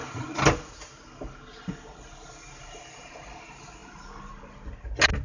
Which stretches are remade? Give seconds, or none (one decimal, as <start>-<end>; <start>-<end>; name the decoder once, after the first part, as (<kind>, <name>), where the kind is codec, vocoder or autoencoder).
none